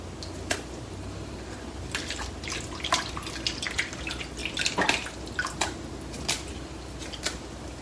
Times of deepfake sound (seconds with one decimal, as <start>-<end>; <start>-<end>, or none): none